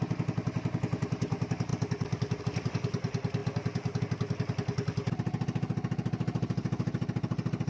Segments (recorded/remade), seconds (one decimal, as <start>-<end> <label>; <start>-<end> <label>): 0.0-7.7 recorded